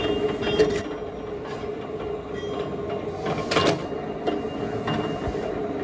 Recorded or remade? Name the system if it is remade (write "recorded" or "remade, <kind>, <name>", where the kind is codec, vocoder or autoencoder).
recorded